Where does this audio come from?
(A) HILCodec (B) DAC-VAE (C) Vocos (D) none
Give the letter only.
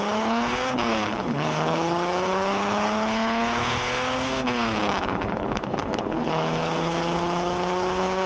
A